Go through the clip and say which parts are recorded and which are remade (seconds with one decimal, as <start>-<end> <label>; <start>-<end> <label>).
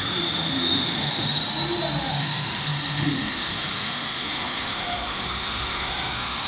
0.0-1.4 remade; 1.4-2.1 recorded; 2.1-6.5 remade